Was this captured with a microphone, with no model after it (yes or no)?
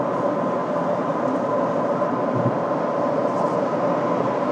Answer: yes